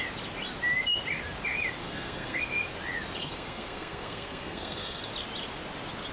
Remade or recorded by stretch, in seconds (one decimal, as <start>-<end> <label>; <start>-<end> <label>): 0.0-1.8 recorded; 1.8-2.4 remade; 2.4-3.2 recorded; 3.2-5.0 remade; 5.0-6.1 recorded